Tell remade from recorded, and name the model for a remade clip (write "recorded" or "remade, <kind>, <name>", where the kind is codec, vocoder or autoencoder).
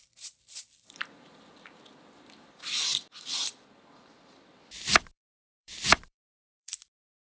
remade, vocoder, BigVGAN v2